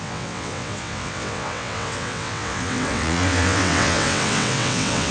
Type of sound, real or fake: fake